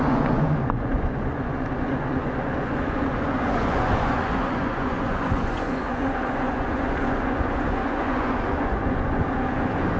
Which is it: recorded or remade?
remade